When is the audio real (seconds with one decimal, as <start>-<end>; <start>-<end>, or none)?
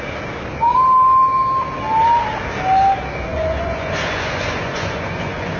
0.0-3.3